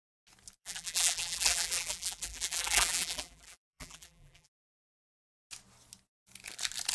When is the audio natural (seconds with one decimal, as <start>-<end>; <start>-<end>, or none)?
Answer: 0.0-0.6; 4.7-6.9

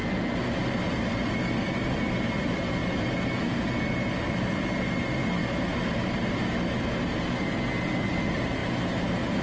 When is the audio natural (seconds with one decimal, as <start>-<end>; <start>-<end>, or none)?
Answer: 0.0-0.9; 2.8-4.3; 5.4-8.0; 8.6-9.4

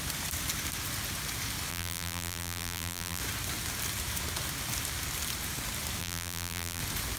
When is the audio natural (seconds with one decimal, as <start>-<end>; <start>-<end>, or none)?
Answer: 0.0-1.7; 3.2-6.0; 6.8-7.2

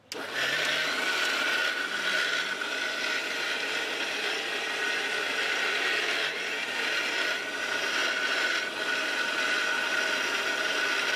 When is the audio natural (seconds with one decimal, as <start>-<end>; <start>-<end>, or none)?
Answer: 0.0-11.2